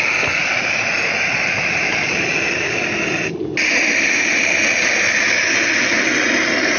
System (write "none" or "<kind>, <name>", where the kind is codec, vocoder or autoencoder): none